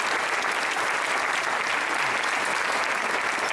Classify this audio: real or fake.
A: real